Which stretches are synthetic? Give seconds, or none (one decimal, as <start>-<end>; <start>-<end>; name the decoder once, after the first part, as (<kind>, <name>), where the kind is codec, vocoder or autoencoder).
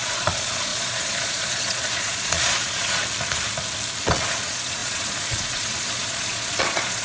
0.0-3.0 (vocoder, Vocos); 4.0-7.0